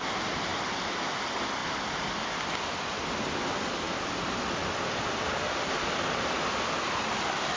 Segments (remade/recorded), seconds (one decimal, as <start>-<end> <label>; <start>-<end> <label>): 0.0-7.6 recorded